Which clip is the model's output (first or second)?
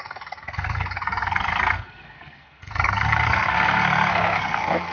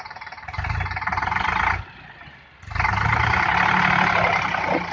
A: first